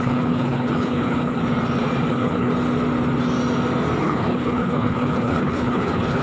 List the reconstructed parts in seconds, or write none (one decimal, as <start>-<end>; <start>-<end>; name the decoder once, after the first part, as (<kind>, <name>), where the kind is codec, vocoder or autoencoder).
0.0-1.4 (codec, HILCodec); 2.1-2.5; 4.0-6.2